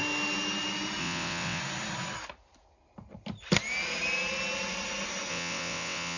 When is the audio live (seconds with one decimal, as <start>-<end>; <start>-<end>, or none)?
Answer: 0.0-1.0; 1.6-5.3